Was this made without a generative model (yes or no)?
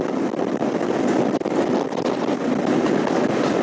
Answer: yes